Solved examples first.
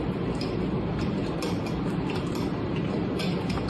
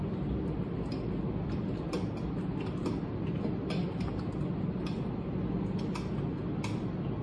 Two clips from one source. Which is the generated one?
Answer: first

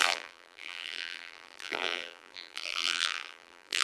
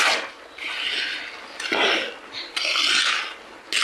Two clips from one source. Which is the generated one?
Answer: first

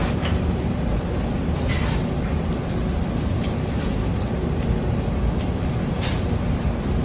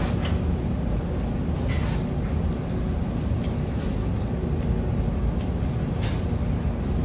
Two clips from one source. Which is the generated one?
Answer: first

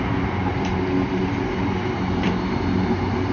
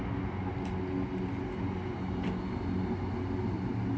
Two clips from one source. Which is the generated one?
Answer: first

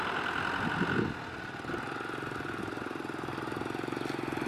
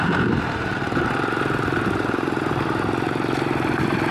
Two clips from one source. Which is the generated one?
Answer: second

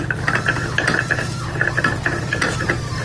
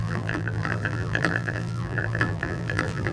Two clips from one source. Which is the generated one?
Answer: second